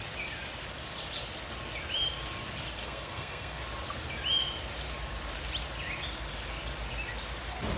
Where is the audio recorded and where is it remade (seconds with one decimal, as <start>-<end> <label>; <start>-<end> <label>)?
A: 0.0-2.8 recorded; 2.8-3.6 remade; 3.6-7.8 recorded